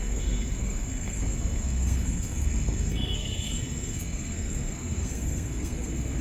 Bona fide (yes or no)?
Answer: no